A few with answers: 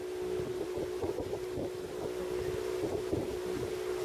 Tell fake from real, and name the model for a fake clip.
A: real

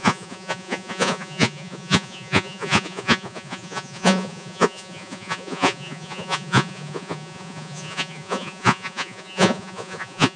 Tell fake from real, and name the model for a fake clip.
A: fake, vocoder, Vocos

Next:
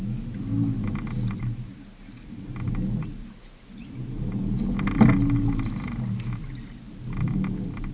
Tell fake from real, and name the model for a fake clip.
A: real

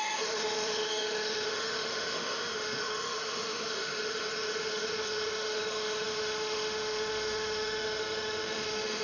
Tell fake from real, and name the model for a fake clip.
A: fake, autoencoder, DAC-VAE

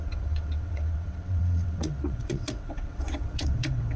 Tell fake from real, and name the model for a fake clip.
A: fake, vocoder, WaveNeXt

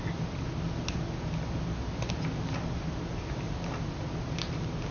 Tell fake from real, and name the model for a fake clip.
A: real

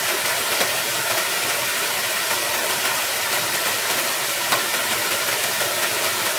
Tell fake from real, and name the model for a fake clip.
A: fake, vocoder, BigVGAN v2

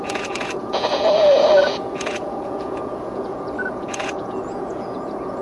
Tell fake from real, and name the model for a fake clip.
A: fake, vocoder, Vocos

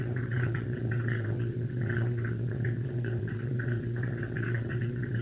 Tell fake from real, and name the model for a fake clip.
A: fake, vocoder, WaveNeXt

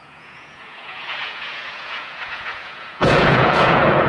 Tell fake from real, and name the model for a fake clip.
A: fake, vocoder, Vocos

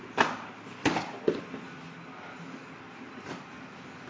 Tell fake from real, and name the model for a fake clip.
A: real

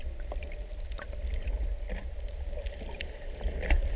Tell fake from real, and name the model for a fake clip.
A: real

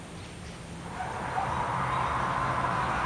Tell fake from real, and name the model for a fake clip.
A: real